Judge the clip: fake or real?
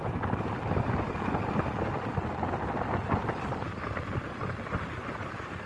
real